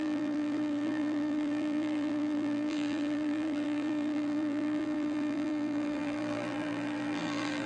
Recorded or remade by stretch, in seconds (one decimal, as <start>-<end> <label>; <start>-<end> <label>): 0.0-7.7 remade